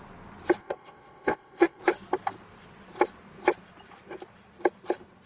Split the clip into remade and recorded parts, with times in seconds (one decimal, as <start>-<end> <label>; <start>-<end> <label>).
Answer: 0.0-0.6 recorded; 0.6-1.8 remade; 1.8-5.3 recorded